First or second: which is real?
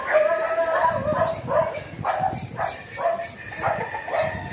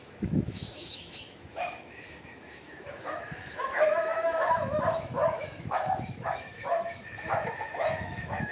first